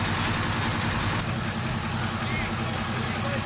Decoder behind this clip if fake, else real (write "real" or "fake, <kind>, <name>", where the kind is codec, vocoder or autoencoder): real